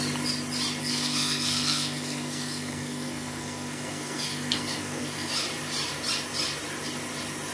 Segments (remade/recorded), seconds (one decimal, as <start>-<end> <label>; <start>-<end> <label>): 0.0-0.8 recorded; 0.8-5.3 remade; 5.3-7.5 recorded